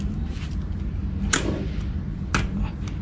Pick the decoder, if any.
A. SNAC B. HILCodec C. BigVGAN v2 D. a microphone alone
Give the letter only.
D